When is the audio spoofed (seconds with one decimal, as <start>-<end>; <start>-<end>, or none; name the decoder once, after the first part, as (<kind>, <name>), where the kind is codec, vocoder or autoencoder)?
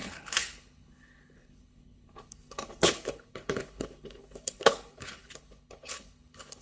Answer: 0.0-6.6 (codec, HILCodec)